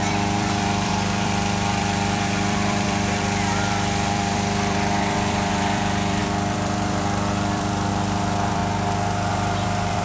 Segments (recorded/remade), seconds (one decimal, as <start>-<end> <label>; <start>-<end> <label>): 0.0-8.6 remade; 8.6-9.3 recorded; 9.3-10.0 remade